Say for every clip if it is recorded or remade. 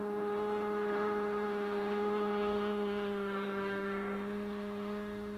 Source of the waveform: remade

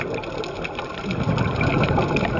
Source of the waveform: recorded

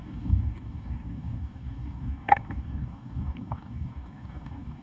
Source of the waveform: remade